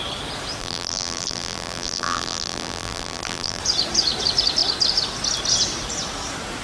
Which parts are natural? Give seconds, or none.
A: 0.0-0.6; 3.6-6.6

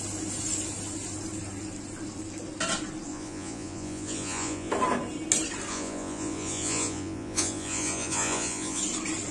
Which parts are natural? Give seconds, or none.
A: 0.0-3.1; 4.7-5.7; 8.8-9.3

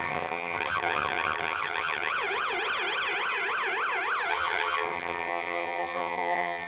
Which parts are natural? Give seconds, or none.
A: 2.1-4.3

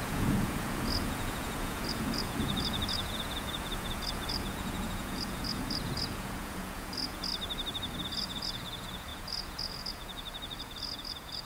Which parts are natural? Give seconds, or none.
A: 7.3-8.1